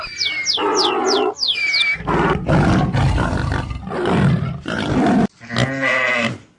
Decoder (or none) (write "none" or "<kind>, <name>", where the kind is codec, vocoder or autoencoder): none